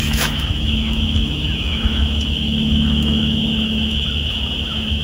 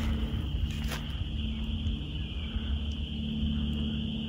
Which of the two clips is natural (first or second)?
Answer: second